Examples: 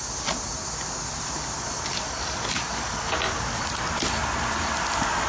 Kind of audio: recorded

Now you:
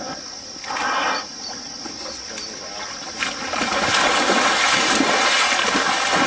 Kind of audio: recorded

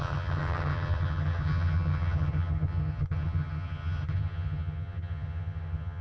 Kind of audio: remade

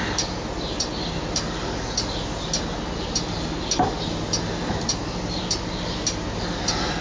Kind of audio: recorded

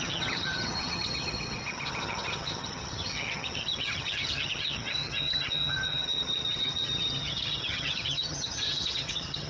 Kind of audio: remade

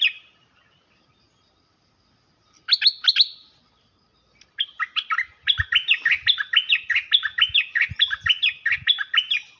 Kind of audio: recorded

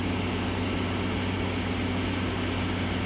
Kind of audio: recorded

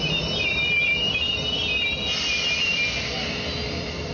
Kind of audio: recorded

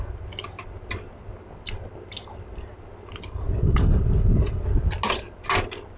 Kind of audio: recorded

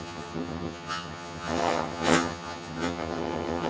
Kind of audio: remade